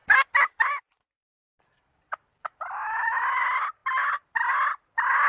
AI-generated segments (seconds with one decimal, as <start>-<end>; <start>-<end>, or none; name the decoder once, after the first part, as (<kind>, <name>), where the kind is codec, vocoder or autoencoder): none